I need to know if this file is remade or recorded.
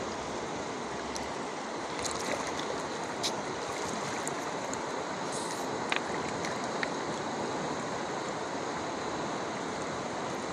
recorded